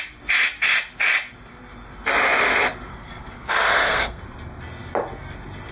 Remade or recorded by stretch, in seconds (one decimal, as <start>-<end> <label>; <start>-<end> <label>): 0.0-2.9 recorded; 2.9-4.2 remade; 4.2-5.7 recorded